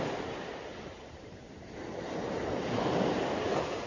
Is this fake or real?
fake